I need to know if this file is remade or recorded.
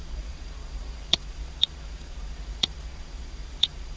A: remade